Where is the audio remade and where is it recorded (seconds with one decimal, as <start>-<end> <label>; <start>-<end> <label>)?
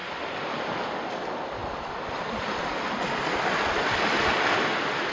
0.0-1.1 remade; 1.1-1.6 recorded; 1.6-2.9 remade; 2.9-3.8 recorded; 3.8-5.1 remade